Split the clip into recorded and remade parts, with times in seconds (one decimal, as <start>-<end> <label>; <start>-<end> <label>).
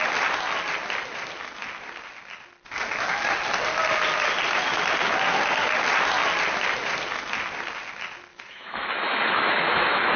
0.0-8.3 recorded; 8.3-10.2 remade